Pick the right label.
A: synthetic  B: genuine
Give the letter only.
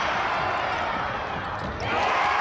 B